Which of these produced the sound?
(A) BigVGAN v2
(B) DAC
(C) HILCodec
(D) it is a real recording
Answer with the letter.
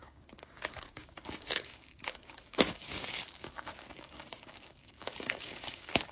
B